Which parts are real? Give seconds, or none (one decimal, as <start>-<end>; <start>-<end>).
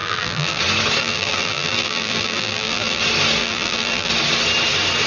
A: 0.6-1.0; 3.0-3.4; 4.1-5.1